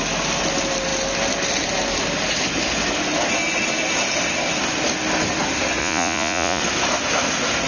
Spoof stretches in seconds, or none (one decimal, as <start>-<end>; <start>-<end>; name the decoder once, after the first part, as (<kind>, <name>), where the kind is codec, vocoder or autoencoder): 5.8-6.6 (vocoder, Vocos)